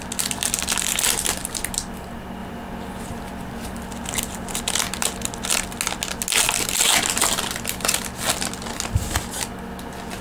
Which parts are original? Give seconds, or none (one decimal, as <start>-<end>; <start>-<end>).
0.0-10.2

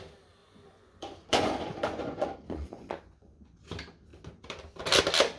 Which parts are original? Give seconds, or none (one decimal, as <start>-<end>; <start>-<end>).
0.0-0.4; 3.6-5.4